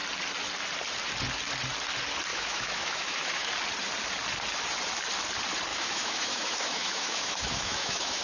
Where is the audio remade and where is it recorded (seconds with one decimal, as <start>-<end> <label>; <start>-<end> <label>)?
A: 0.0-2.3 recorded; 2.3-3.5 remade; 3.5-5.7 recorded; 5.7-8.2 remade